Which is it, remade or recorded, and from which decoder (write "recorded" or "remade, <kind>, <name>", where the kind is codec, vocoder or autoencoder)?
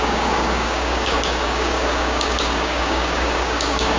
remade, codec, DAC